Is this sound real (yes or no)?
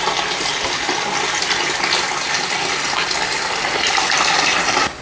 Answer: yes